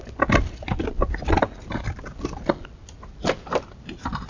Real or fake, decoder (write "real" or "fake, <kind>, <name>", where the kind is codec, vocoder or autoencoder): real